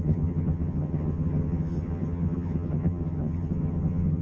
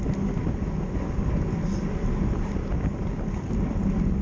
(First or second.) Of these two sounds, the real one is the second